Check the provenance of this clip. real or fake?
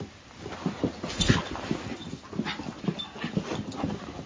real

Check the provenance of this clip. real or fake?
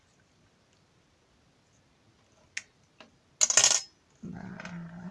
real